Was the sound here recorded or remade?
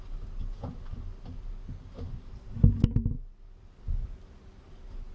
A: recorded